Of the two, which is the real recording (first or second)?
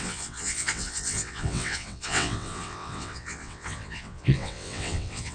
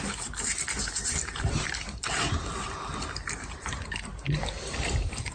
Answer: second